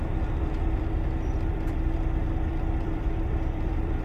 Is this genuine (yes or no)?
no